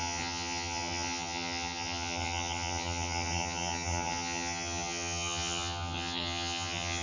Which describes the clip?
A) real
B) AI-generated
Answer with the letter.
B